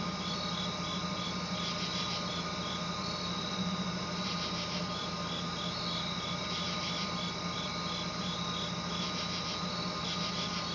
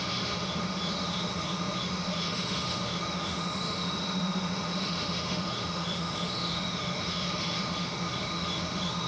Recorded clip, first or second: first